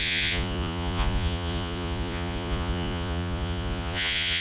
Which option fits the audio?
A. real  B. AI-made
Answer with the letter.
B